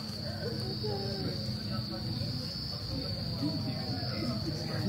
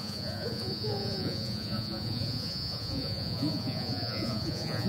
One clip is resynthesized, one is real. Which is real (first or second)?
first